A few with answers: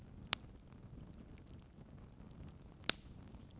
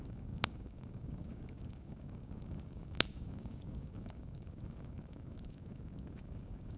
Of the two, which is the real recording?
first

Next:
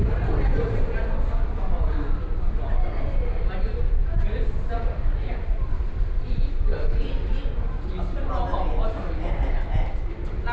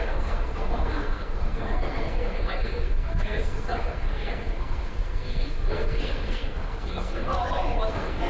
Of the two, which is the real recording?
first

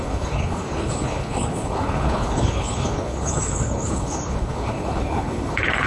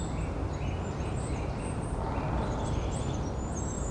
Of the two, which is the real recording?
second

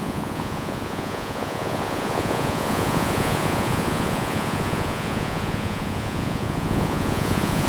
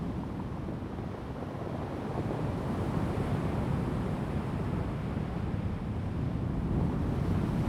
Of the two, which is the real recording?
second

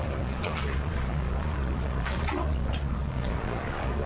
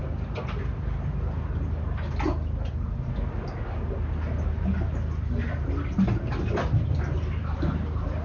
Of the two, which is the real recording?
second